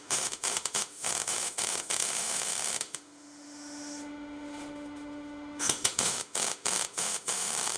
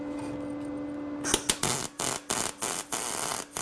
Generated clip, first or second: first